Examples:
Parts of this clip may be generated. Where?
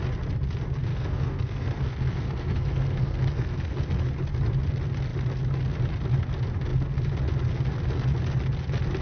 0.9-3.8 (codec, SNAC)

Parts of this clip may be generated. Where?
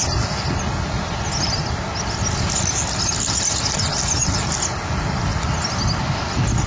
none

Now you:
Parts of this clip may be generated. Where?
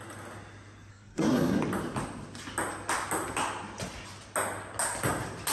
0.9-1.6 (codec, SNAC)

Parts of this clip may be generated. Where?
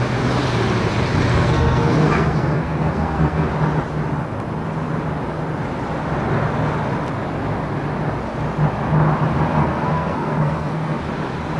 1.3-3.5 (codec, SNAC); 9.6-11.0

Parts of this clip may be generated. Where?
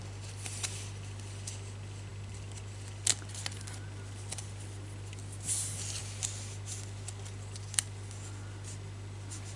none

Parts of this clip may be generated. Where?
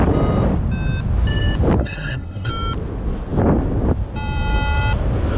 1.8-2.5 (codec, SNAC)